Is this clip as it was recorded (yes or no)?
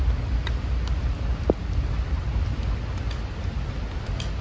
yes